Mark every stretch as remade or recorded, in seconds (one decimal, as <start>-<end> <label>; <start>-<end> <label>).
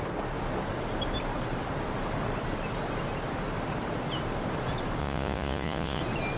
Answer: 0.0-5.0 recorded; 5.0-6.0 remade; 6.0-6.4 recorded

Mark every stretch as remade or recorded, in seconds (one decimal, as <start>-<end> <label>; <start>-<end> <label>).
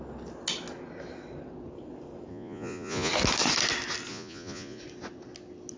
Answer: 0.0-2.3 recorded; 2.3-3.1 remade; 3.1-4.1 recorded; 4.1-4.8 remade; 4.8-5.8 recorded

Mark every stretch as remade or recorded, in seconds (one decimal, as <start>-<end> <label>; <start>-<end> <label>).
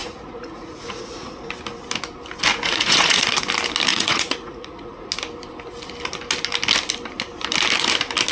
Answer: 0.0-1.5 remade; 1.5-2.5 recorded; 2.5-3.4 remade; 3.4-3.9 recorded; 3.9-5.1 remade; 5.1-8.3 recorded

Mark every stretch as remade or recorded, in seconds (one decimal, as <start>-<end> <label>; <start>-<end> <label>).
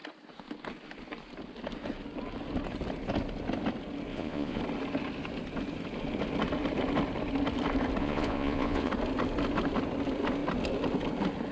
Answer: 0.0-4.1 recorded; 4.1-4.6 remade; 4.6-8.0 recorded; 8.0-8.9 remade; 8.9-11.5 recorded